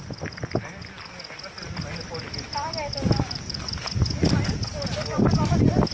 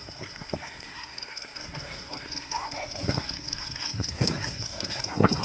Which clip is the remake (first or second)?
second